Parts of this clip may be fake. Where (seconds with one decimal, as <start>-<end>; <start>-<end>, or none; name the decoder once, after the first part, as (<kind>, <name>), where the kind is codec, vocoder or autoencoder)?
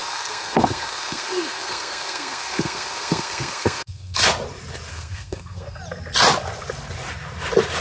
0.0-4.2 (codec, SNAC); 4.9-5.8